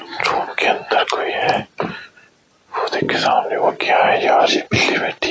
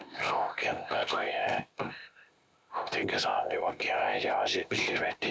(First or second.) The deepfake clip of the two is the second